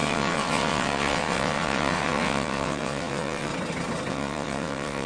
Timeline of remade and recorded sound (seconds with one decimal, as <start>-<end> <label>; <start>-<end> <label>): 0.0-3.5 remade; 3.5-4.1 recorded; 4.1-5.1 remade